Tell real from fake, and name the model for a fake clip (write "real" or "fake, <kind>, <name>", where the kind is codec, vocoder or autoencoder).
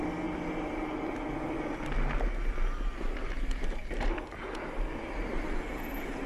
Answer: real